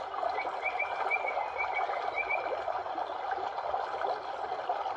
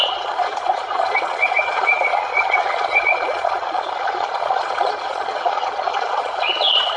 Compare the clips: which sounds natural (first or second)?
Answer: first